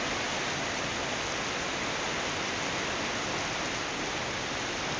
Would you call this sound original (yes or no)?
yes